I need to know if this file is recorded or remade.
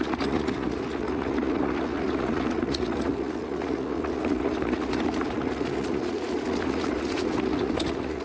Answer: remade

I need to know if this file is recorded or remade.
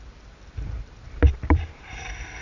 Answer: remade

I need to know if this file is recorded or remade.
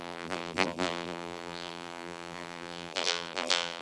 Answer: remade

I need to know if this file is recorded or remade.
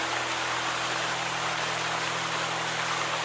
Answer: recorded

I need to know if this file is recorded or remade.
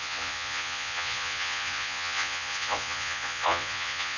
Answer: remade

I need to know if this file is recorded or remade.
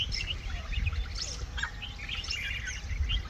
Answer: recorded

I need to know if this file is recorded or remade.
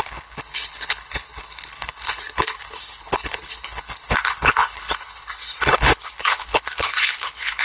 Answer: remade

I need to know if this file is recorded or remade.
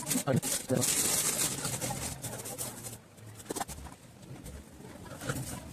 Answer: recorded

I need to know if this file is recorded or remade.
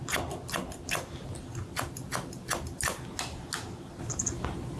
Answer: recorded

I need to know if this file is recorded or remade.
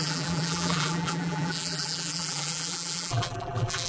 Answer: remade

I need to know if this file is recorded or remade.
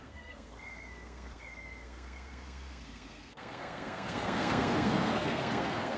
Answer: remade